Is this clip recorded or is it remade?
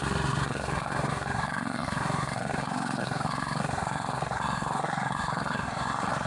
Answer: remade